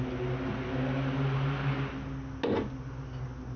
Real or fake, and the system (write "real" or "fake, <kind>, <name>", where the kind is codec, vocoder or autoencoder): real